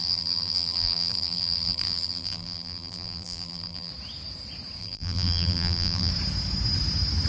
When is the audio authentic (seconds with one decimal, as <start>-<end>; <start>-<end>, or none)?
3.9-4.8; 6.1-7.3